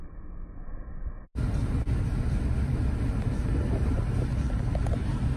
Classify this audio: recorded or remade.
recorded